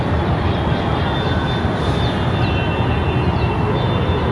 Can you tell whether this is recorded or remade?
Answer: recorded